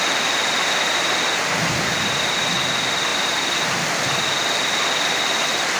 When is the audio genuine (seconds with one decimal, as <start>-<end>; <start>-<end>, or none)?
0.0-5.8